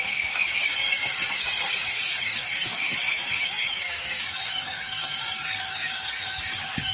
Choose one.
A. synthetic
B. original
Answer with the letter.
A